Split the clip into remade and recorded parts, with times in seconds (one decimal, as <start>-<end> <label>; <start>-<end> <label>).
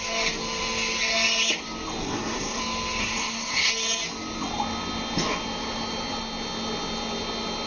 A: 0.0-2.0 recorded; 2.0-2.6 remade; 2.6-3.0 recorded; 3.0-3.7 remade; 3.7-7.7 recorded